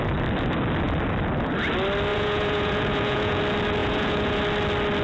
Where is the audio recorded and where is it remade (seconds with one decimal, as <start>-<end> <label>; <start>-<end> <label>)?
0.0-2.1 recorded; 2.1-3.4 remade; 3.4-3.8 recorded; 3.8-4.4 remade; 4.4-5.0 recorded